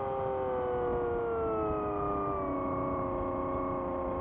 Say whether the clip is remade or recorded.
recorded